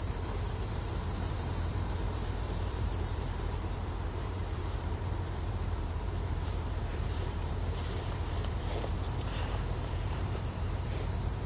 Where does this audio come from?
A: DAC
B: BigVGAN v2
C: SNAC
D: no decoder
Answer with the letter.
B